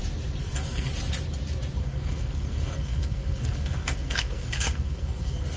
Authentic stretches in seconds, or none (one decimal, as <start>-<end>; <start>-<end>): 0.0-0.4; 0.9-1.8